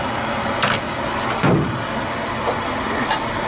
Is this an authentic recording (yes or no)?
yes